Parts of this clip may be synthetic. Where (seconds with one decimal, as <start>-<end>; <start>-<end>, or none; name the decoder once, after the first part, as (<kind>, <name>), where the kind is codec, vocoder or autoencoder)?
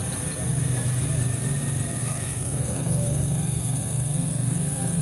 2.0-5.0 (codec, SNAC)